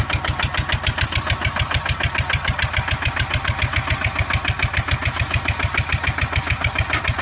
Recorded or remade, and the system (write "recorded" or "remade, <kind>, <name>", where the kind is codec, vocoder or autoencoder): recorded